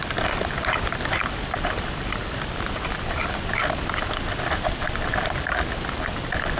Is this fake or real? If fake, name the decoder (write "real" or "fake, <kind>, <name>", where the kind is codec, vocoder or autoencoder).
real